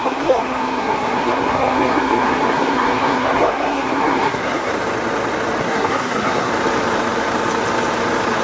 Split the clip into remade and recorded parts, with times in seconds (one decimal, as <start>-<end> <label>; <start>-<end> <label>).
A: 0.0-4.7 remade; 4.7-5.6 recorded; 5.6-6.5 remade; 6.5-8.4 recorded